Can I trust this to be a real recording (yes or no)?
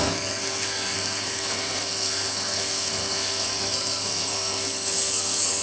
no